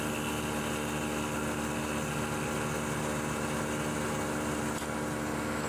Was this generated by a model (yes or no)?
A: no